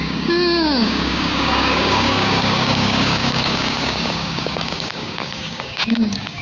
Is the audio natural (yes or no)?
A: no